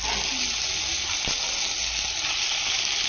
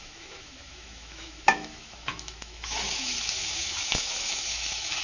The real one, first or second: first